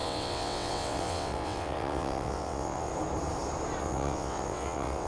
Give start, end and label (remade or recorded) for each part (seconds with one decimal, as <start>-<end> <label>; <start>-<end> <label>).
0.0-2.9 remade; 2.9-3.8 recorded; 3.8-5.1 remade